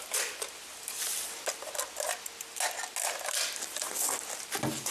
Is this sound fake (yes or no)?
no